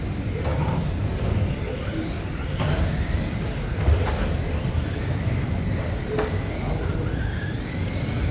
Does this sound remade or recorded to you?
recorded